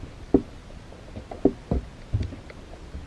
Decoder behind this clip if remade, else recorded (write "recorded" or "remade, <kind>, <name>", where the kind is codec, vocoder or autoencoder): recorded